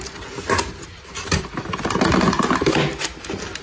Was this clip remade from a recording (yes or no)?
no